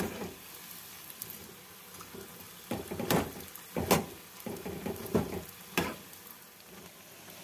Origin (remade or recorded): recorded